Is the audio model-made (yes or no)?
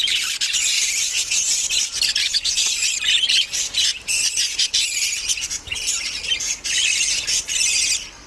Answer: yes